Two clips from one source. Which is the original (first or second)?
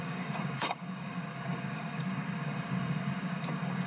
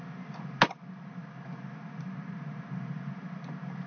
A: second